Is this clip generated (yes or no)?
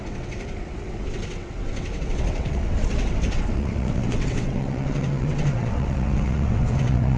yes